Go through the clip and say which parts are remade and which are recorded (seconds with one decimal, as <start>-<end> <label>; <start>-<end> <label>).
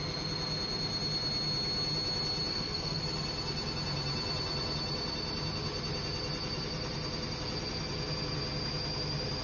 0.0-2.5 recorded; 2.5-3.0 remade; 3.0-9.4 recorded